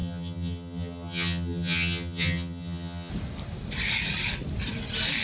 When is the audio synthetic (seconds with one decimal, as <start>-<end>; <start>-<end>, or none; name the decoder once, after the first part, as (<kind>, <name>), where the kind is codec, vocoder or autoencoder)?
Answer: 0.0-3.1 (vocoder, HiFi-GAN)